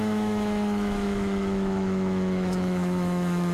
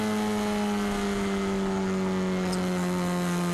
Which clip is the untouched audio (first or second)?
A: second